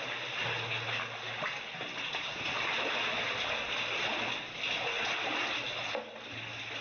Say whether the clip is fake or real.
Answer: real